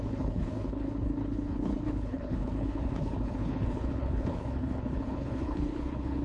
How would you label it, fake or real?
fake